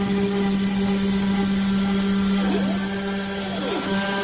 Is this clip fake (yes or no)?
no